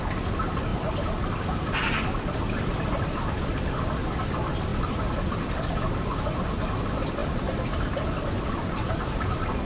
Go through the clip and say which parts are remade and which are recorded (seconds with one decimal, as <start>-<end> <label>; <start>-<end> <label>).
0.0-0.7 recorded; 0.7-3.7 remade; 3.7-9.6 recorded